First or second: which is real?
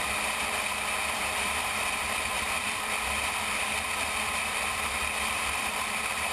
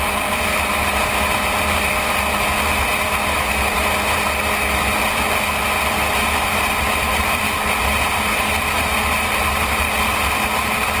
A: second